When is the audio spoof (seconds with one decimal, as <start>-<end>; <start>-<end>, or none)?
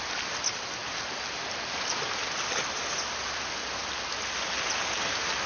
none